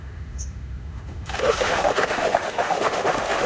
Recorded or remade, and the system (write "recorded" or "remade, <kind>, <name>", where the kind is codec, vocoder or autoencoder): remade, autoencoder, DAC-VAE